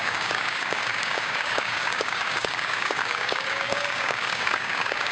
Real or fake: fake